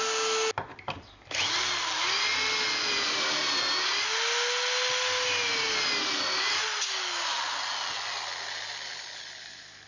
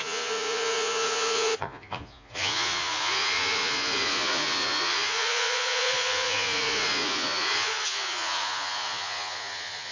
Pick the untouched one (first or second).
first